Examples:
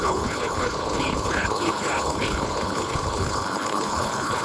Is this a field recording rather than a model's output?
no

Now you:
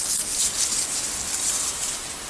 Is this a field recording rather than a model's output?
yes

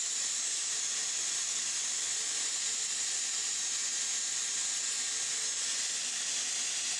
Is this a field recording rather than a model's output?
yes